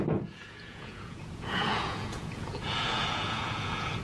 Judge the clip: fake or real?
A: fake